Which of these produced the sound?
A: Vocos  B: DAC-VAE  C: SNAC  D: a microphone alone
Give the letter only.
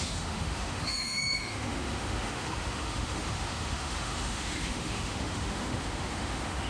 B